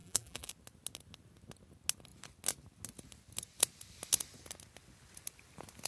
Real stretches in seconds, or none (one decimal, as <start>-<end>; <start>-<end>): 0.5-5.9